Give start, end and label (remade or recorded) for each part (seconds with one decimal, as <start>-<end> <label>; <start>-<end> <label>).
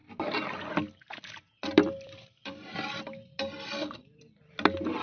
0.0-5.0 recorded